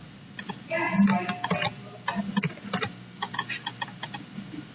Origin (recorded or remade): recorded